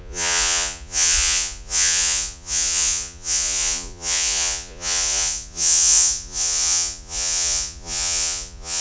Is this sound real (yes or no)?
no